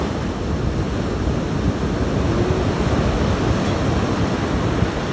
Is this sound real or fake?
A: real